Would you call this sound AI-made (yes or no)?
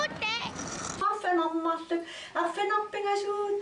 no